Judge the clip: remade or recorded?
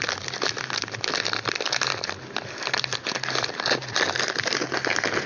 recorded